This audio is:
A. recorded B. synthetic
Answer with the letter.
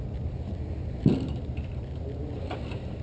A